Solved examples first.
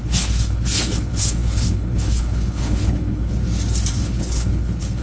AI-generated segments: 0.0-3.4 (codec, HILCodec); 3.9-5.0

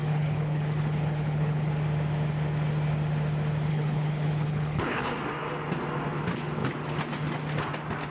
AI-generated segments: 0.0-1.7 (codec, HILCodec); 3.7-5.1

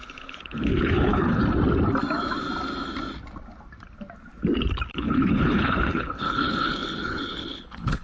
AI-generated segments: 0.0-1.4 (codec, HILCodec); 4.9-8.0